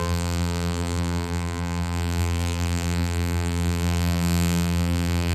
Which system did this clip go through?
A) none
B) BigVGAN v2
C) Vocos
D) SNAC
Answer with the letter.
B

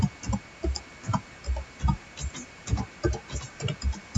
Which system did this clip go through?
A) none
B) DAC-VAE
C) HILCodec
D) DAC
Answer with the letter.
A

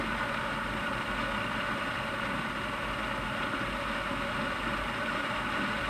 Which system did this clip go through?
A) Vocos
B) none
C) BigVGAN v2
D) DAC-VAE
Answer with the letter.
B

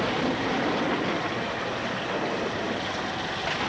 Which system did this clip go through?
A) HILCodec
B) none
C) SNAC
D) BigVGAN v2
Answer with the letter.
B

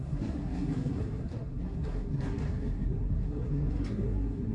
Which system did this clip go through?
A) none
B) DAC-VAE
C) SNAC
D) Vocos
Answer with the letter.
C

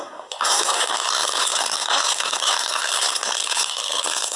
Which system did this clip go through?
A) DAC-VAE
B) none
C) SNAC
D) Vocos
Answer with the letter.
C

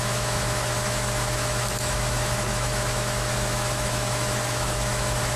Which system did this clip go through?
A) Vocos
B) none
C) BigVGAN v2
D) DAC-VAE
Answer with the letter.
D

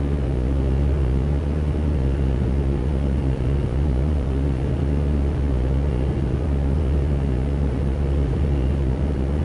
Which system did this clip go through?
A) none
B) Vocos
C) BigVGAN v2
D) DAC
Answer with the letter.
B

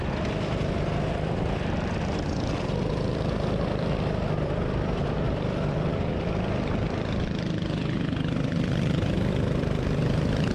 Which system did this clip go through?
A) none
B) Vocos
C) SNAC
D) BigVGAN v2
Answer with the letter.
D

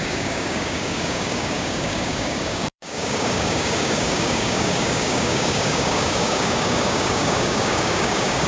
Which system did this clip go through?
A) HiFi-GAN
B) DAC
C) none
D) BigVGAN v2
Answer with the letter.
B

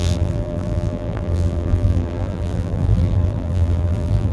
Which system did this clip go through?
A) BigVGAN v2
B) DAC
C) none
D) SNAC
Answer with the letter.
A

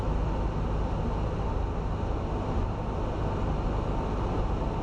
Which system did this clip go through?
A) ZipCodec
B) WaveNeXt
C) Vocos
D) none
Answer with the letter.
D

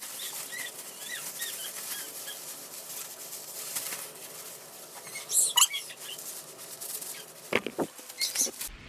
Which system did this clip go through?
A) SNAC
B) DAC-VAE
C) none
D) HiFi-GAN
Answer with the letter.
C